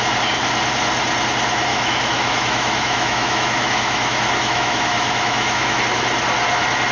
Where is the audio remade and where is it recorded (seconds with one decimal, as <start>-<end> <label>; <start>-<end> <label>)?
0.0-1.7 recorded; 1.7-5.8 remade; 5.8-6.9 recorded